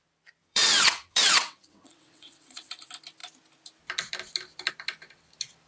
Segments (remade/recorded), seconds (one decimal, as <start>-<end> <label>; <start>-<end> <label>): 0.0-0.4 recorded; 0.4-2.7 remade; 2.7-5.7 recorded